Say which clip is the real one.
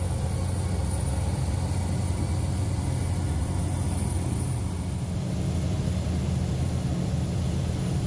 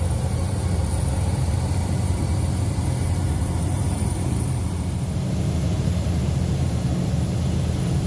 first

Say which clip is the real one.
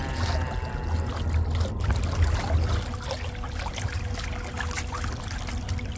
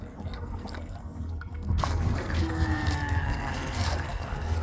first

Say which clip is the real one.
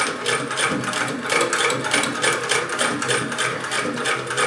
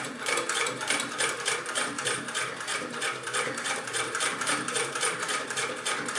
first